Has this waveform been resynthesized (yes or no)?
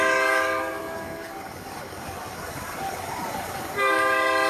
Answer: yes